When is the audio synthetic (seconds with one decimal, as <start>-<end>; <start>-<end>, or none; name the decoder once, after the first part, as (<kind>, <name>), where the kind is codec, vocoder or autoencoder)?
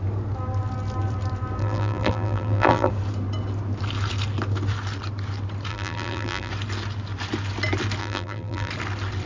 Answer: 1.6-2.9 (vocoder, BigVGAN v2); 5.7-6.5; 8.0-8.7